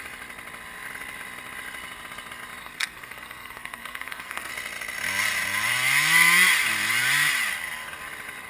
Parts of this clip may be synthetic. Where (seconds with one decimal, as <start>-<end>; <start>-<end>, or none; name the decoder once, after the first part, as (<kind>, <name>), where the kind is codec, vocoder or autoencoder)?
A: 2.6-4.5 (codec, SNAC)